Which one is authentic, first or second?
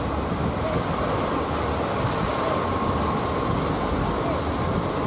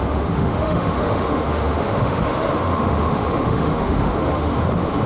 first